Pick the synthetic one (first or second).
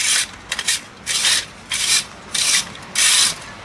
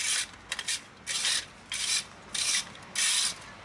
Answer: first